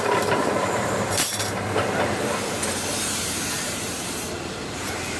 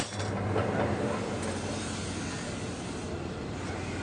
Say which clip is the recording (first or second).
second